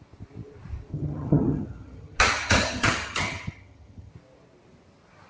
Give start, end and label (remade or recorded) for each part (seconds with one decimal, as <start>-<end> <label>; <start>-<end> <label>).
0.0-0.9 recorded; 0.9-4.1 remade; 4.1-5.3 recorded